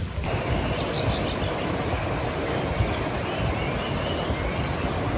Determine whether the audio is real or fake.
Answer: real